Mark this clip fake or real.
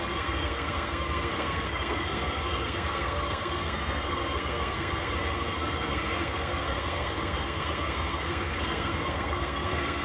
fake